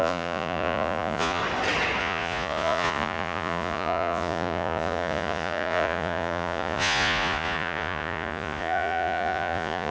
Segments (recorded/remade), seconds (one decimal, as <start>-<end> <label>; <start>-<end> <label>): 0.0-1.4 remade; 1.4-2.0 recorded; 2.0-9.9 remade